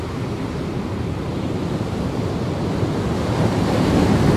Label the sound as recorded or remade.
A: recorded